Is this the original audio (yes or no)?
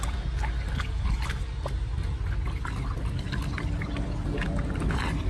yes